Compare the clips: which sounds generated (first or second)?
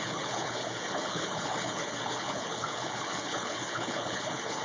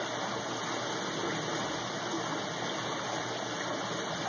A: first